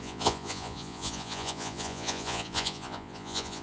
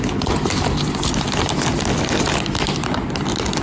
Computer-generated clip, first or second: first